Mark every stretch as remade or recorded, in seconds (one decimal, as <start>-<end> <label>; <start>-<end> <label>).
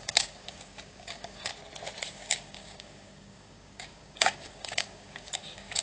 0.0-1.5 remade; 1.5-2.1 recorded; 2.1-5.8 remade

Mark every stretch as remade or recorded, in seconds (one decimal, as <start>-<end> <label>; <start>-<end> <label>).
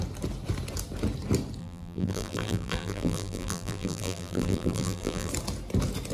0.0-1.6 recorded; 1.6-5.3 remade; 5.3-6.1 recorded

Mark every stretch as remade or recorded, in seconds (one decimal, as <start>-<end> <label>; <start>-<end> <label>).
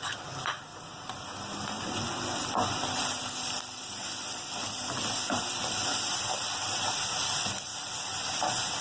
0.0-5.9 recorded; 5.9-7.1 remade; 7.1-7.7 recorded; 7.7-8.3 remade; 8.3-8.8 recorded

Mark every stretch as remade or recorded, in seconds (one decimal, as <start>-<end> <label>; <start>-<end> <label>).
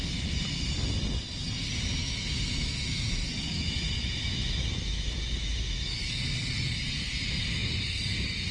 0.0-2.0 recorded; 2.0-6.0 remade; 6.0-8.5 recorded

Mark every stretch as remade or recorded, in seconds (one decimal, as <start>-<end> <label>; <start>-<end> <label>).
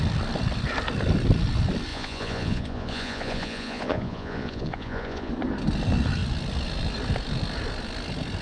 0.0-1.9 recorded; 1.9-5.3 remade; 5.3-8.4 recorded